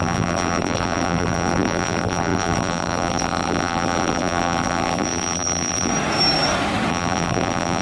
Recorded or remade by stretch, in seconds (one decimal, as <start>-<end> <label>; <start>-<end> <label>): 0.0-5.9 remade; 5.9-6.9 recorded; 6.9-7.8 remade